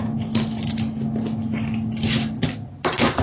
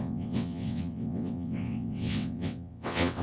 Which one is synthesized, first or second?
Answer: second